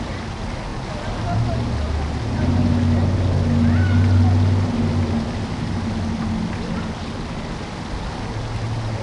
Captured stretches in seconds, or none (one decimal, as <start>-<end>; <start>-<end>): 0.0-9.0